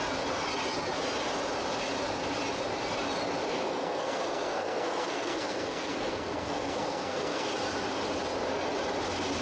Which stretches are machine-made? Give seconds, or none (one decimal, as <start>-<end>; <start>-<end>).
3.5-7.5